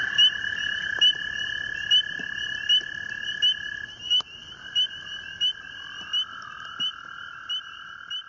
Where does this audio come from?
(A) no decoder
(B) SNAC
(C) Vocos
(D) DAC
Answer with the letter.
A